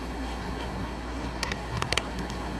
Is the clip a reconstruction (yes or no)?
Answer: yes